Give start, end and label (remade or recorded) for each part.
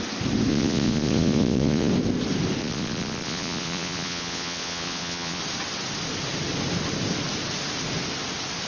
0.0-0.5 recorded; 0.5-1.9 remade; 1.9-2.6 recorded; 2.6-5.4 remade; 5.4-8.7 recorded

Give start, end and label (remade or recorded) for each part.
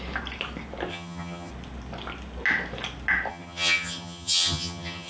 0.0-0.9 recorded; 0.9-1.5 remade; 1.5-3.3 recorded; 3.3-5.1 remade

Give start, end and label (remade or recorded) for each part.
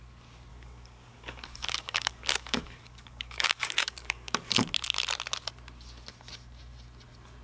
0.0-0.5 recorded; 0.5-4.7 remade; 4.7-7.4 recorded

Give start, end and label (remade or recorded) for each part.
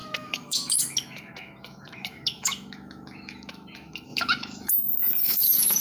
0.0-5.8 remade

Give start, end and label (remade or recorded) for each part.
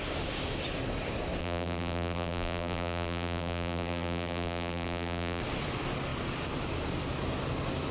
0.0-1.4 recorded; 1.4-5.4 remade; 5.4-7.9 recorded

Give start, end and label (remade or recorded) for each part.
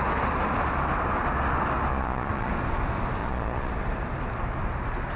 0.0-1.9 recorded; 1.9-2.5 remade; 2.5-3.2 recorded; 3.2-3.7 remade; 3.7-5.2 recorded